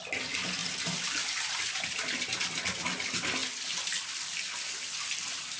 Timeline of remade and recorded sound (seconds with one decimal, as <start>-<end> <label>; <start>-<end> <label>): 0.0-5.6 recorded